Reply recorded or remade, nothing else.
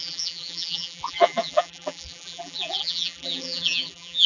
remade